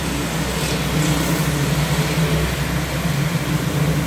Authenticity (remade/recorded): recorded